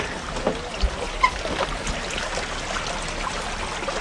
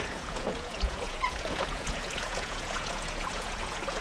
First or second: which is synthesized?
second